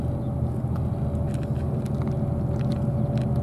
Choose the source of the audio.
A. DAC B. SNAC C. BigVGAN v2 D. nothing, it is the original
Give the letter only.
D